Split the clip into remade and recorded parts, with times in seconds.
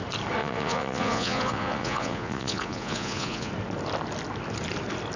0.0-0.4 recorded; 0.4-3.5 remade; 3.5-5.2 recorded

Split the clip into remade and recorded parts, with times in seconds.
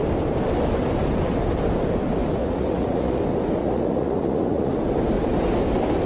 0.0-2.4 recorded; 2.4-3.2 remade; 3.2-3.6 recorded; 3.6-4.7 remade; 4.7-6.1 recorded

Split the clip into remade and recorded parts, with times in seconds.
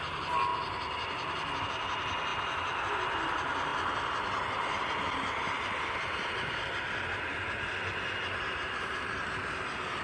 0.0-10.0 recorded